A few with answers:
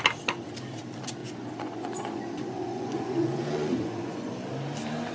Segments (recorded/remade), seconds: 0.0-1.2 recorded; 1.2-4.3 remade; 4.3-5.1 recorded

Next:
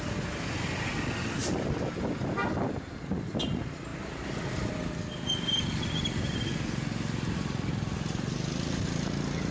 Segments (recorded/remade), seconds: 0.0-9.5 recorded

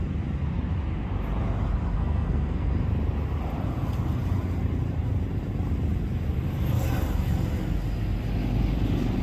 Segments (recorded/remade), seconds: 0.0-2.0 recorded; 2.0-2.7 remade; 2.7-9.2 recorded

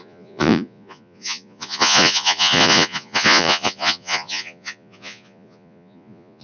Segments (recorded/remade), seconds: 0.0-6.4 remade

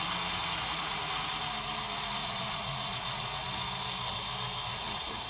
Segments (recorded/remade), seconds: 0.0-0.4 recorded; 0.4-1.3 remade; 1.3-2.2 recorded; 2.2-3.4 remade; 3.4-4.7 recorded; 4.7-5.3 remade

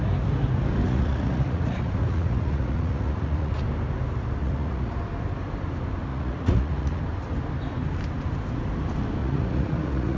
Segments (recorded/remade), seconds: 0.0-0.8 recorded; 0.8-3.5 remade; 3.5-4.4 recorded; 4.4-4.9 remade; 4.9-6.1 recorded; 6.1-7.0 remade; 7.0-9.2 recorded; 9.2-10.2 remade